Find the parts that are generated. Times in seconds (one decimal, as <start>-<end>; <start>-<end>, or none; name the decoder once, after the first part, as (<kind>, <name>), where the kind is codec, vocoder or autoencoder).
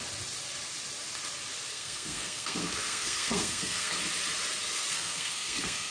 1.7-3.9 (codec, SNAC); 4.9-5.9